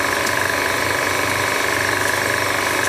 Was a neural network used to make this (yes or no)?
no